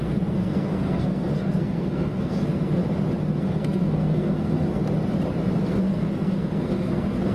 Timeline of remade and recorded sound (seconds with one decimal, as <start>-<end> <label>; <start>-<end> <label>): 0.0-2.8 remade; 2.8-3.4 recorded; 3.4-4.8 remade; 4.8-5.6 recorded; 5.6-7.3 remade